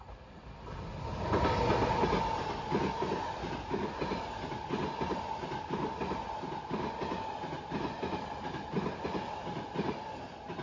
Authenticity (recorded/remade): recorded